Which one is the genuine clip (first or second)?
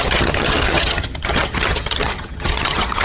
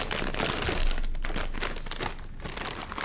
second